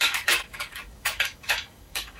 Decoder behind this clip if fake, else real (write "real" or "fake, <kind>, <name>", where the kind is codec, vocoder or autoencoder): fake, codec, DAC